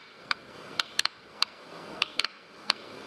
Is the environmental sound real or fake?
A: fake